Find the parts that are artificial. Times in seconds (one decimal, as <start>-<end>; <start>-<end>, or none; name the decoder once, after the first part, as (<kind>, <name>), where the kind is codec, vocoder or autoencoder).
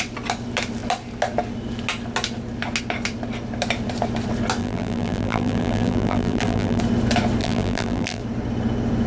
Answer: 4.6-6.8 (vocoder, BigVGAN v2); 7.4-8.2